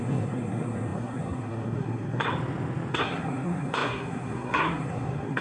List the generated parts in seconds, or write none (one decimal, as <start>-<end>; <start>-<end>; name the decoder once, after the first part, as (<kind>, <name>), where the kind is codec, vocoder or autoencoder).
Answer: 0.0-2.2 (codec, SNAC); 2.9-5.4